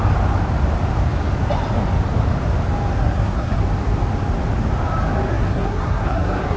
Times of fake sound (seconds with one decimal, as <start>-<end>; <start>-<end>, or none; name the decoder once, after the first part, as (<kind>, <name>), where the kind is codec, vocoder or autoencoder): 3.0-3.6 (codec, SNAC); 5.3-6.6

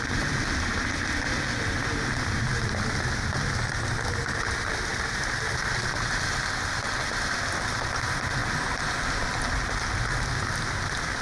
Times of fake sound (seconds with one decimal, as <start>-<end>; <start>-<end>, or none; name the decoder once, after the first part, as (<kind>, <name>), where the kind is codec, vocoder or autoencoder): none

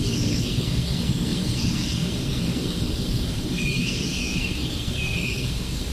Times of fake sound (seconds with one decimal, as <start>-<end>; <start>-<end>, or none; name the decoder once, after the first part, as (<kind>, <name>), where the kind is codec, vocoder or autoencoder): 0.0-5.9 (codec, SNAC)